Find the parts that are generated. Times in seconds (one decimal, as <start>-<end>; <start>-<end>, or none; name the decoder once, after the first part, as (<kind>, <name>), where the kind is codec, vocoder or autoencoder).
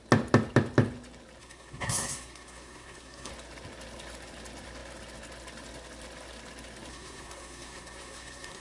1.4-3.3 (codec, SNAC); 6.9-8.6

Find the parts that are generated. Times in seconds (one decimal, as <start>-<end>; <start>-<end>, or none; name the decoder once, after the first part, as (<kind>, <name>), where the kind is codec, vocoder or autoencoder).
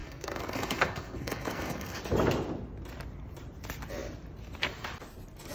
0.0-2.0 (codec, SNAC)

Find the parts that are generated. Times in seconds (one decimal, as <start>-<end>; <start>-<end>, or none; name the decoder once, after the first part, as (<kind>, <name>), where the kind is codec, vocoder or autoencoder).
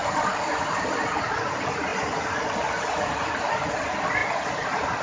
none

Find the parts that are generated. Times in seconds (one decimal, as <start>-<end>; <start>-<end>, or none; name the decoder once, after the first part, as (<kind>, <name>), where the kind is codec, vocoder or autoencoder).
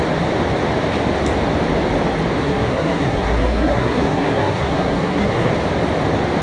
2.4-5.5 (codec, SNAC)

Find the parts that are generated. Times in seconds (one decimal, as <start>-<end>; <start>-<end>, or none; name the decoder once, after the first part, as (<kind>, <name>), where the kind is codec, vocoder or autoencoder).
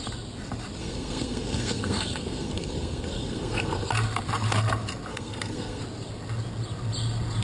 0.8-3.9 (codec, SNAC); 5.1-5.8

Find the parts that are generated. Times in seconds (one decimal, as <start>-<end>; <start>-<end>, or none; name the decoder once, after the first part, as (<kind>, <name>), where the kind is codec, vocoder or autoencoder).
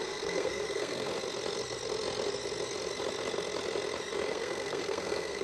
0.0-1.1 (codec, SNAC); 4.3-5.4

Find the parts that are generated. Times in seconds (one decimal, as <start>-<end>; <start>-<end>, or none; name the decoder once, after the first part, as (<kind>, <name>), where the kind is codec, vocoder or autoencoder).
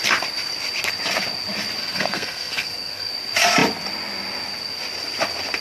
1.8-3.1 (codec, SNAC)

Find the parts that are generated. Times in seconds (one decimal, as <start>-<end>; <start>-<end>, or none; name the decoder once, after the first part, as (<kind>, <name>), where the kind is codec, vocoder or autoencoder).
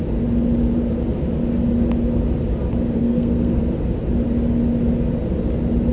3.0-3.6 (codec, SNAC)